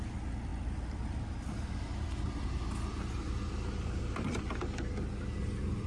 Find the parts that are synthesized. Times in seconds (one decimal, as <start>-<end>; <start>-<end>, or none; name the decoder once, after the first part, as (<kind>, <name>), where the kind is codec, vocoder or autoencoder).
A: none